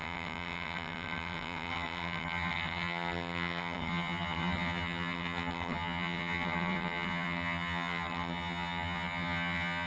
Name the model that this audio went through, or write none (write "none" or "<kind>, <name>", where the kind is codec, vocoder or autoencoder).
vocoder, HiFi-GAN